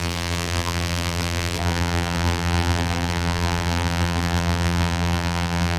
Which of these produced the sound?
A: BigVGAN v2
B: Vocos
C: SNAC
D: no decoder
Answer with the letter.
A